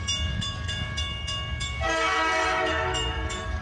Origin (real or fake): fake